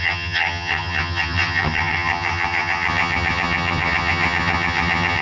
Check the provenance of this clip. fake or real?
fake